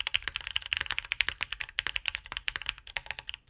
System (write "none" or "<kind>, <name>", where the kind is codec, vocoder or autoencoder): none